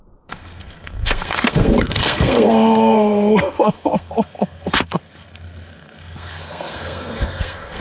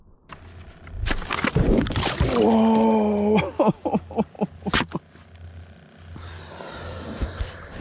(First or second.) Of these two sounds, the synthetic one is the first